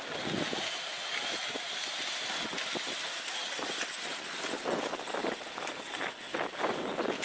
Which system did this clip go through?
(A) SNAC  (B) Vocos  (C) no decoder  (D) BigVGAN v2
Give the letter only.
C